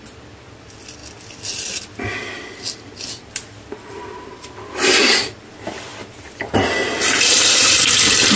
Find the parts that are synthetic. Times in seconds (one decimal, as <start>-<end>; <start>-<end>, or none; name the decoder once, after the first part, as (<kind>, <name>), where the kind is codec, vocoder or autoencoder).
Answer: none